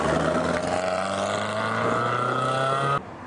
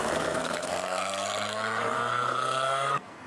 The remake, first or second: second